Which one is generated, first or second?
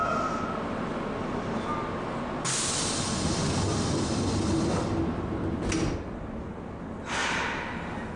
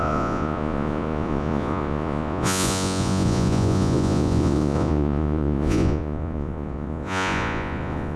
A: second